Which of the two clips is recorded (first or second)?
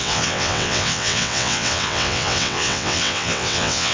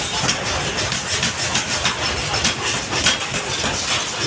second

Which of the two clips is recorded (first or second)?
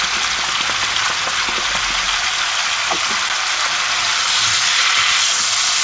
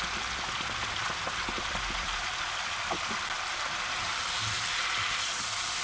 first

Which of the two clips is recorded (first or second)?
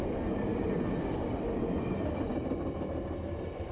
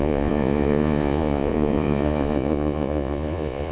first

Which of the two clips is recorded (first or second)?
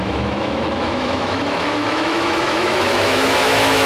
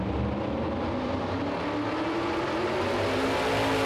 second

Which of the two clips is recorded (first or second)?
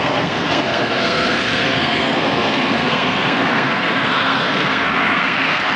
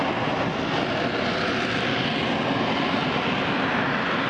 second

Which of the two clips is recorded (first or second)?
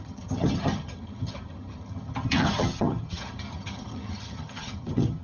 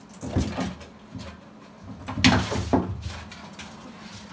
second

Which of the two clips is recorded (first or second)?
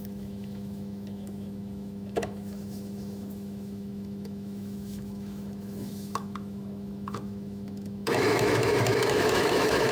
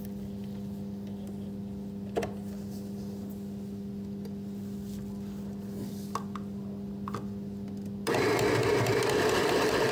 second